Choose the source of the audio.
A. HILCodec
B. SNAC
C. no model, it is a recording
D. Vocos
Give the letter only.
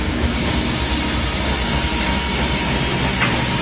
C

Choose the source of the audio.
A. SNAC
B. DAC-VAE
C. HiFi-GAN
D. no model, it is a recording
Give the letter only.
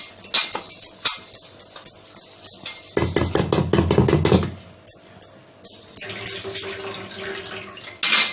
D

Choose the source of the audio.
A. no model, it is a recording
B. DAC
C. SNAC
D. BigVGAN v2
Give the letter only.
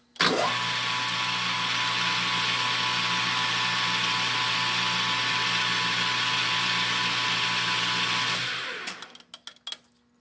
A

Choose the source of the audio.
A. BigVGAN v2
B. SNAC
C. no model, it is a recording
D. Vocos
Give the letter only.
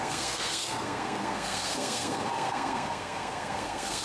B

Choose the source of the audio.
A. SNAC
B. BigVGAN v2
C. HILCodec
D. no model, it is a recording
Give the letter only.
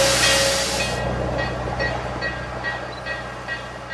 D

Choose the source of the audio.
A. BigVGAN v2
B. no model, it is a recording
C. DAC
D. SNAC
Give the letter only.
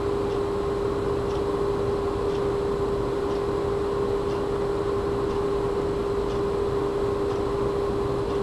B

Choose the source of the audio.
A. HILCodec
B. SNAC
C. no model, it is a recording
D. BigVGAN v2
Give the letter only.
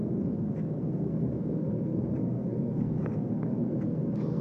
B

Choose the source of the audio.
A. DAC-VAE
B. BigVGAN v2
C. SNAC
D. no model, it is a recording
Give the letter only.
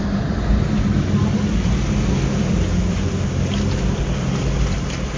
D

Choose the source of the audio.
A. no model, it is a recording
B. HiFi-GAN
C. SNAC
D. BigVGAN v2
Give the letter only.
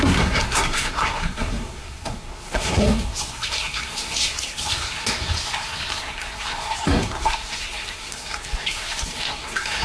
C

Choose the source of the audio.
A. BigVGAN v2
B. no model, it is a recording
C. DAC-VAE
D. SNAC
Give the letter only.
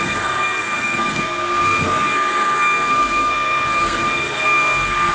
D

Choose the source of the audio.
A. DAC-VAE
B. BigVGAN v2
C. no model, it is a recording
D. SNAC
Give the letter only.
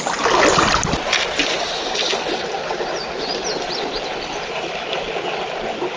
C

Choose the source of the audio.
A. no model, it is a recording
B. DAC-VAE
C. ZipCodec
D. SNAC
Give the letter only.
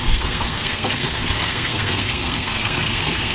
D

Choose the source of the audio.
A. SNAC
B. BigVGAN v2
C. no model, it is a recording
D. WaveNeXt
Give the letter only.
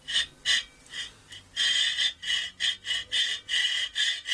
C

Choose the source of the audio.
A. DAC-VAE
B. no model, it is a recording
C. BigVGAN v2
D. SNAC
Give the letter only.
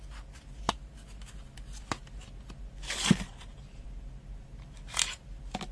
B